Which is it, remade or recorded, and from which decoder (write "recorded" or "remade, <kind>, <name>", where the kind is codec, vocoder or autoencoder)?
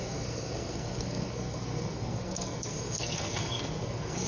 remade, codec, SNAC